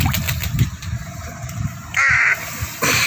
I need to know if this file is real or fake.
real